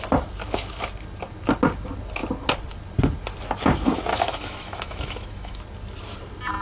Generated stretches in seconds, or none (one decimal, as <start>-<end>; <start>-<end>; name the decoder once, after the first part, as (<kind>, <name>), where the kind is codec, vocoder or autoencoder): 4.1-5.6 (autoencoder, DAC-VAE)